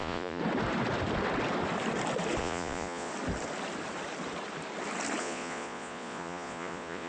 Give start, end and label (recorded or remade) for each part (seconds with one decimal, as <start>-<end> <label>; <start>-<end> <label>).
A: 0.0-0.4 remade; 0.4-2.4 recorded; 2.4-3.1 remade; 3.1-5.2 recorded; 5.2-7.1 remade